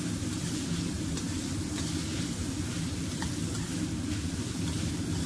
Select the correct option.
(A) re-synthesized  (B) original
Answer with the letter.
B